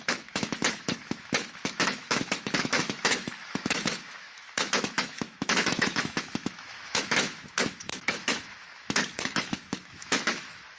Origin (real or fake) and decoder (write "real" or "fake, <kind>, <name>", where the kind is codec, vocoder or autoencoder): fake, autoencoder, DAC-VAE